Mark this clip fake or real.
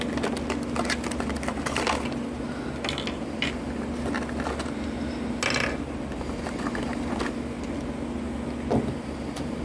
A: real